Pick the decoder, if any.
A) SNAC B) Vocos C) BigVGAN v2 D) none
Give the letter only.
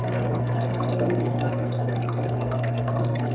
A